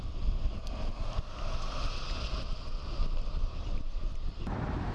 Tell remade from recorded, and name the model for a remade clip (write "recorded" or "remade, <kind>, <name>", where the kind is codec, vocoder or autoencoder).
recorded